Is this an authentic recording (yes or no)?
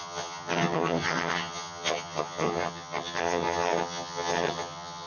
no